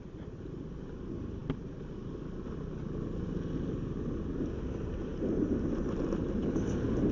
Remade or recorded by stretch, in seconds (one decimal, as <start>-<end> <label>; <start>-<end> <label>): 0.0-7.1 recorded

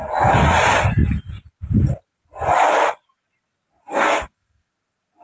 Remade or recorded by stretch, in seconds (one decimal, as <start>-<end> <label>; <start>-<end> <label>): 0.0-3.9 recorded; 3.9-4.7 remade; 4.7-5.2 recorded

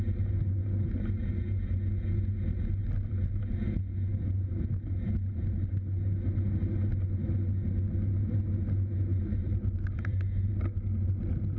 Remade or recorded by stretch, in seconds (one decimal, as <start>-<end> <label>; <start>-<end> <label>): 0.0-2.8 recorded; 2.8-3.4 remade; 3.4-9.1 recorded; 9.1-10.5 remade; 10.5-11.6 recorded

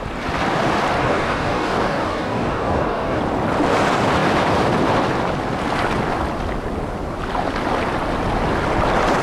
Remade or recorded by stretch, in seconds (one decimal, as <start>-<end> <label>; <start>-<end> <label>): 0.0-1.0 recorded; 1.0-3.2 remade; 3.2-9.2 recorded

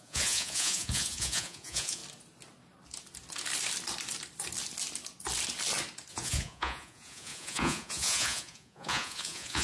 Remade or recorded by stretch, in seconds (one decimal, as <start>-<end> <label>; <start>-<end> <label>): 0.0-2.0 remade; 2.0-6.1 recorded; 6.1-9.6 remade

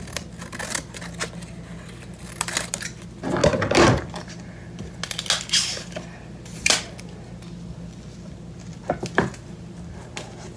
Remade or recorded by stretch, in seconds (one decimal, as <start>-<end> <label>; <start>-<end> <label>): 0.0-10.6 recorded